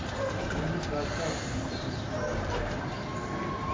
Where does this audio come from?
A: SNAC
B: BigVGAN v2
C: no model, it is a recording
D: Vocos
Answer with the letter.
B